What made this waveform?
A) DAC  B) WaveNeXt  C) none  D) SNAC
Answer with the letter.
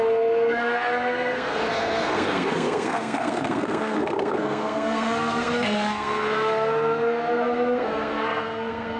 D